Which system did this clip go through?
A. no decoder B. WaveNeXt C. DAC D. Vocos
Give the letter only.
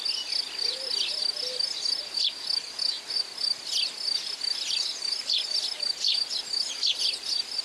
A